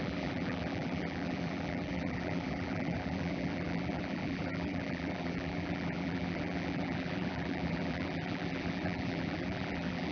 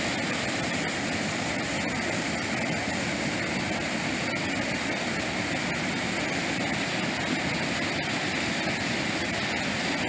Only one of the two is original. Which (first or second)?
second